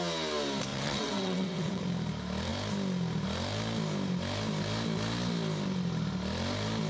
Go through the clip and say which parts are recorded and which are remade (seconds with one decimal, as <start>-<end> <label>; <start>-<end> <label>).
0.0-0.7 recorded; 0.7-1.8 remade; 1.8-6.9 recorded